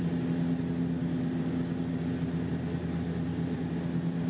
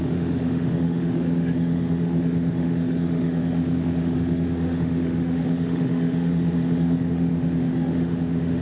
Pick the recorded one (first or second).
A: first